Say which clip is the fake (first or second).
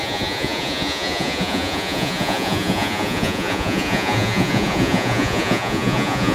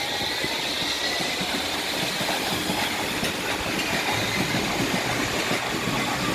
first